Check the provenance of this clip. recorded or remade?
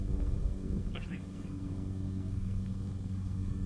remade